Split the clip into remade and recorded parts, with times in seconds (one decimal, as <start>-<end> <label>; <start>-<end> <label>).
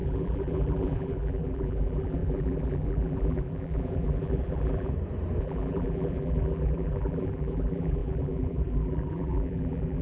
0.0-4.9 remade; 4.9-5.4 recorded; 5.4-10.0 remade